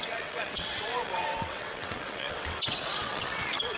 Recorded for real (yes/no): no